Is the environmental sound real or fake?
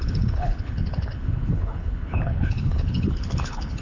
fake